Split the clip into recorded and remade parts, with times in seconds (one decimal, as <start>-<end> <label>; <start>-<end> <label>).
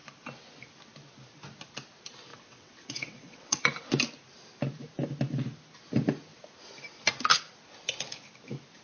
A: 0.0-2.3 recorded; 2.3-3.6 remade; 3.6-8.8 recorded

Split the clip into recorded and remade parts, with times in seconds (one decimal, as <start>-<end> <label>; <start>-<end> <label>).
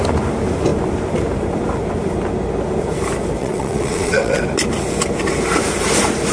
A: 0.0-3.4 recorded; 3.4-4.4 remade; 4.4-6.3 recorded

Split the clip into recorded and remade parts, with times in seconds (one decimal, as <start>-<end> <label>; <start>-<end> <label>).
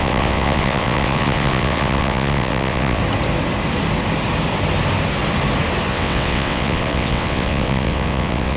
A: 0.0-3.0 remade; 3.0-5.9 recorded; 5.9-8.6 remade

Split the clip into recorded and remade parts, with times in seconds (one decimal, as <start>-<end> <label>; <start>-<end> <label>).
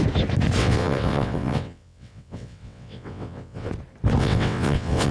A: 0.0-0.6 recorded; 0.6-3.7 remade; 3.7-4.2 recorded; 4.2-5.1 remade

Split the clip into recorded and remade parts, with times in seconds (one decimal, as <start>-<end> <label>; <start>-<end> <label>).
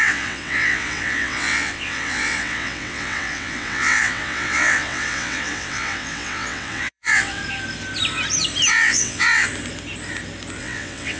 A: 0.0-7.4 remade; 7.4-8.7 recorded; 8.7-9.5 remade; 9.5-10.6 recorded; 10.6-11.2 remade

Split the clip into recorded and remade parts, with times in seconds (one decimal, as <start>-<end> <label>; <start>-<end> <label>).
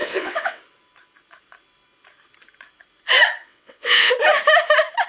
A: 0.0-0.6 remade; 0.6-3.4 recorded; 3.4-4.1 remade; 4.1-5.1 recorded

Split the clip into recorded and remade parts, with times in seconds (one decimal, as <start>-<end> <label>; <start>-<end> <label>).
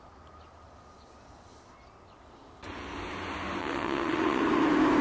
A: 0.0-3.6 recorded; 3.6-4.4 remade; 4.4-5.0 recorded